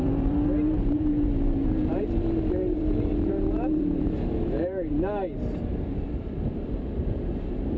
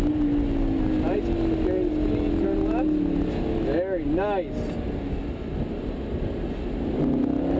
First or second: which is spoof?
first